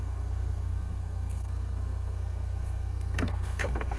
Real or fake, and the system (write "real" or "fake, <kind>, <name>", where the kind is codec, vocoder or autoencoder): fake, codec, SNAC